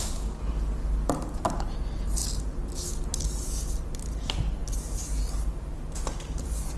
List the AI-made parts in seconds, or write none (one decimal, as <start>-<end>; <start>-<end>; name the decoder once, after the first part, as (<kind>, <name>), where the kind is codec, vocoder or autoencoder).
none